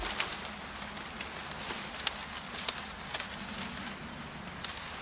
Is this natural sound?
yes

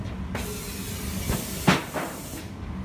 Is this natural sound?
yes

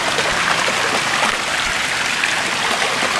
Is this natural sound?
yes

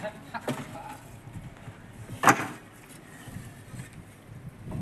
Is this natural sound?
yes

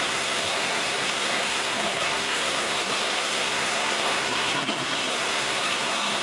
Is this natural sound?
no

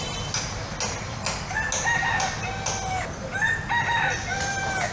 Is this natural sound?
yes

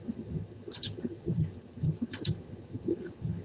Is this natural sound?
no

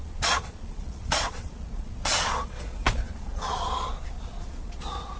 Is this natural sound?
no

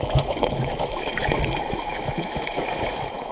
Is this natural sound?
no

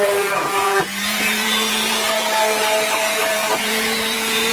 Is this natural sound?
no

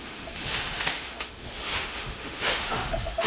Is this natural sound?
no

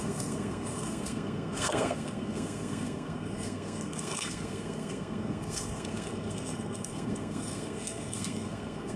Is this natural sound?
no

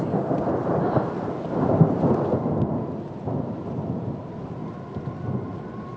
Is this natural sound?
yes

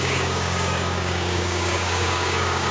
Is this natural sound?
no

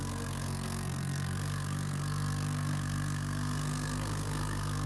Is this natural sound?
no